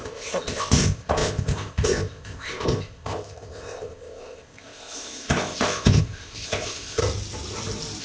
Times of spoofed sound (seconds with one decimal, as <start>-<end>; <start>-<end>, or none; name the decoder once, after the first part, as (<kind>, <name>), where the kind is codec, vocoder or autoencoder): 0.0-7.0 (codec, ZipCodec)